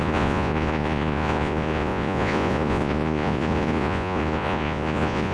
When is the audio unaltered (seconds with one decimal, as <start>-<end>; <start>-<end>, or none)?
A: none